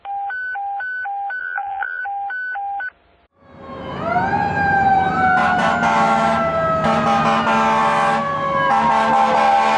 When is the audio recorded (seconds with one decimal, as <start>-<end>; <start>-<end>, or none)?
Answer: 0.0-1.4; 2.0-9.8